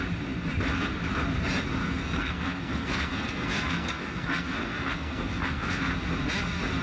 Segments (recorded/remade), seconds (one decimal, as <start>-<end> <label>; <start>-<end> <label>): 0.0-1.8 recorded; 1.8-5.9 remade; 5.9-6.8 recorded